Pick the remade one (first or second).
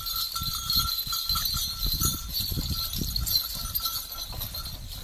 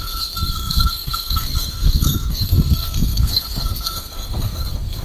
second